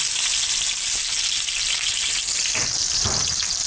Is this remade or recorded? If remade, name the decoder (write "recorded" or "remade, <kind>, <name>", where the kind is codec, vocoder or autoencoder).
recorded